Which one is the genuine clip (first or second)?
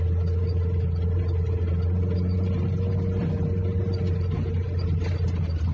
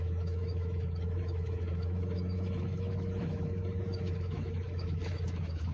first